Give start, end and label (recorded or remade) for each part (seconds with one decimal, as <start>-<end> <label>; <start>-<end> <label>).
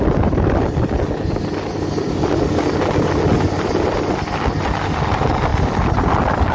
0.0-6.5 recorded